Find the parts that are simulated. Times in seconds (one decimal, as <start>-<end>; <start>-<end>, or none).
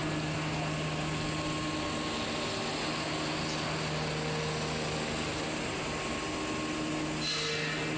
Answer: none